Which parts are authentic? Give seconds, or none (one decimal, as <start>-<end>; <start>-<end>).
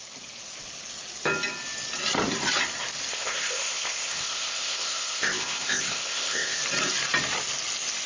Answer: 0.0-3.1; 6.6-8.1